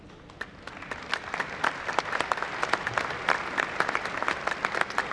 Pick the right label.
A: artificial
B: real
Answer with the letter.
B